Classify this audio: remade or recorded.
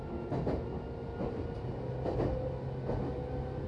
recorded